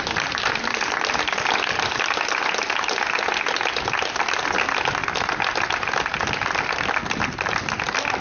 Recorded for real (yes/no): yes